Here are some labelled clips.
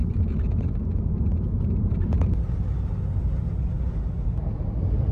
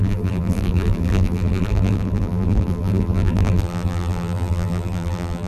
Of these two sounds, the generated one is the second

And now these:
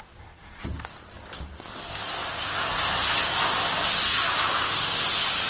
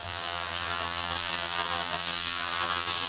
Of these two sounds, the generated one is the second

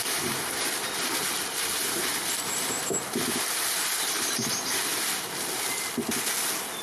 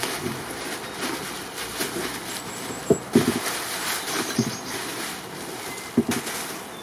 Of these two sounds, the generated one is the first